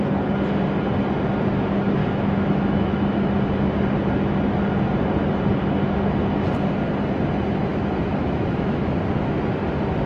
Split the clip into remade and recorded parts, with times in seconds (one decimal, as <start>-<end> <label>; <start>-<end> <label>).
0.0-2.0 recorded; 2.0-3.3 remade; 3.3-7.7 recorded; 7.7-8.9 remade; 8.9-10.1 recorded